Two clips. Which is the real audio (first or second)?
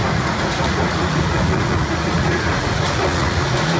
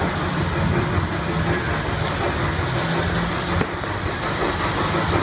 second